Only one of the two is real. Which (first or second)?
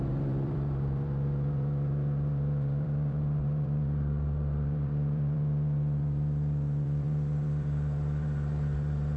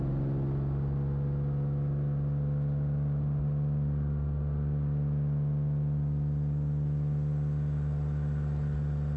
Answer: second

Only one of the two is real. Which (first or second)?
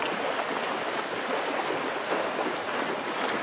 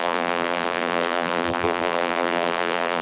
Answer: first